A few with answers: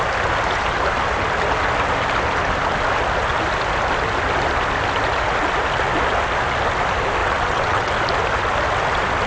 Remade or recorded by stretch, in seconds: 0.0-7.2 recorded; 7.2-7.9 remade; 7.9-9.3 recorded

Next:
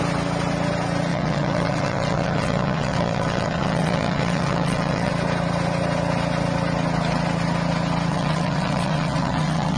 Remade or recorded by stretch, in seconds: 0.0-1.1 recorded; 1.1-5.1 remade; 5.1-8.1 recorded; 8.1-9.8 remade

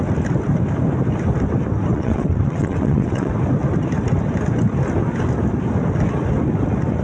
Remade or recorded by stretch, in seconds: 0.0-1.9 recorded; 1.9-3.3 remade; 3.3-7.0 recorded

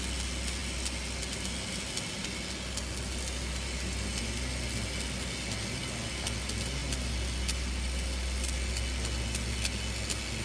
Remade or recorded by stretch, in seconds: 0.0-10.4 recorded

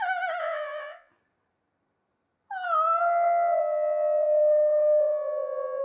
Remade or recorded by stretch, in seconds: 0.0-0.4 recorded; 0.4-1.1 remade; 1.1-3.0 recorded; 3.0-5.8 remade